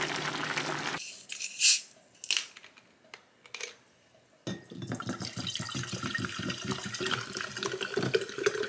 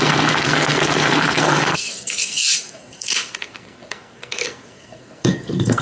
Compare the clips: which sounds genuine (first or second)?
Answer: first